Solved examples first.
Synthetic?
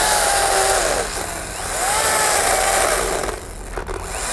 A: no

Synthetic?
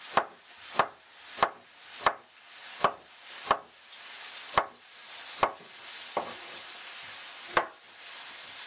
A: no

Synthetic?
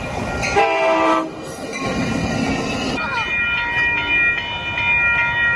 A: no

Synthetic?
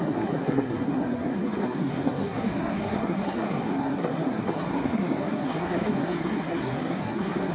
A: yes